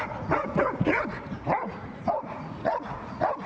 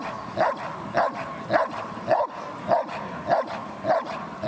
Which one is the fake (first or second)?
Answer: first